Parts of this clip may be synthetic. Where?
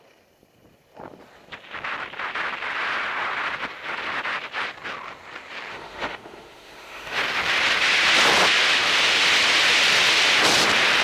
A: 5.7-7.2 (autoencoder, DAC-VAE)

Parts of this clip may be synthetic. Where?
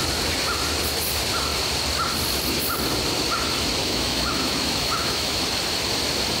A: 3.8-5.4 (autoencoder, DAC-VAE)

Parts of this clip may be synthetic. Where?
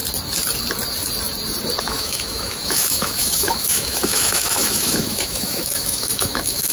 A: 1.8-6.7 (autoencoder, DAC-VAE)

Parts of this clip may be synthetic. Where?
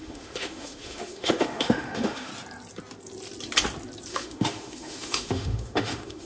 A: 0.0-2.3 (autoencoder, DAC-VAE); 4.1-6.3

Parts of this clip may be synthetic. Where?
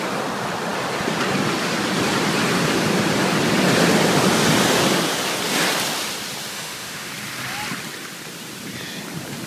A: 6.5-7.1 (autoencoder, DAC-VAE)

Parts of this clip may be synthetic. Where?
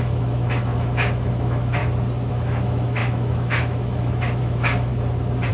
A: 0.0-1.8 (autoencoder, DAC-VAE); 2.3-4.9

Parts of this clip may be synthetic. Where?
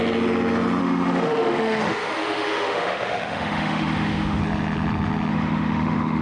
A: 0.8-4.4 (autoencoder, DAC-VAE); 5.3-6.2